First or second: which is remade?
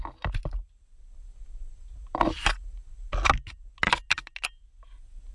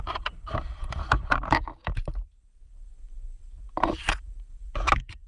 second